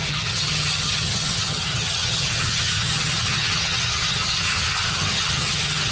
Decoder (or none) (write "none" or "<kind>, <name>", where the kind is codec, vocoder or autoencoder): vocoder, HiFi-GAN